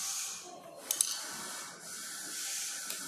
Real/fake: real